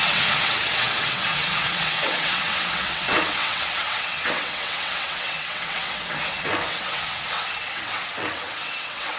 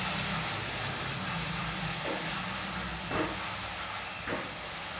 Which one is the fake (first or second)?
first